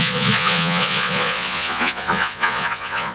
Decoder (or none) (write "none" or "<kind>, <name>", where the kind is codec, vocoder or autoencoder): vocoder, Vocos